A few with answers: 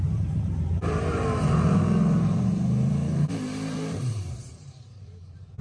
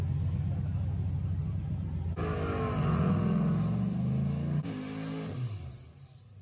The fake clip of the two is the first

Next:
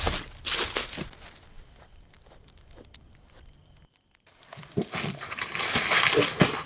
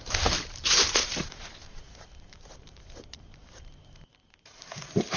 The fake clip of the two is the second